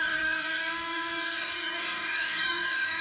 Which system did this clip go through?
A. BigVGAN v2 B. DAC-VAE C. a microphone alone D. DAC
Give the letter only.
D